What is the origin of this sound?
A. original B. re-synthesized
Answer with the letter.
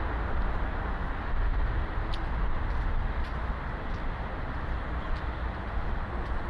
A